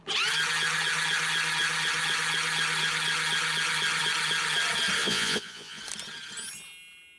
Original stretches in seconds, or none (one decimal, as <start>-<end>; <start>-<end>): 0.0-5.0; 5.8-7.2